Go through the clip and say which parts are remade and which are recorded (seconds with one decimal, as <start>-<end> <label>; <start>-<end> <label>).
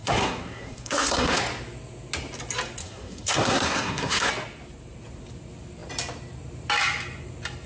0.0-1.4 remade; 1.4-2.8 recorded; 2.8-4.3 remade; 4.3-7.7 recorded